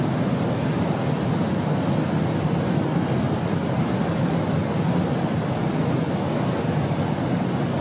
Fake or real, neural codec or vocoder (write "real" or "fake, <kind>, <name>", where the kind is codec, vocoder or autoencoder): real